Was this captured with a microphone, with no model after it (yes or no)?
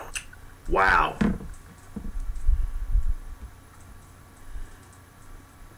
no